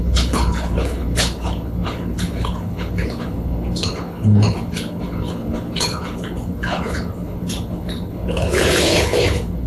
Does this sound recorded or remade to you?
remade